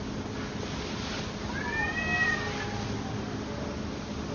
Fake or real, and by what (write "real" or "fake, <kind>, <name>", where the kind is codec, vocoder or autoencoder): real